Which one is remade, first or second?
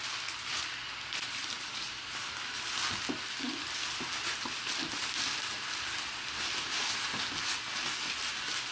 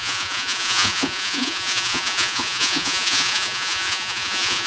second